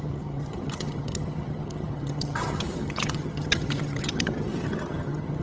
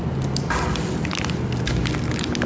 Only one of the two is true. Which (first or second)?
second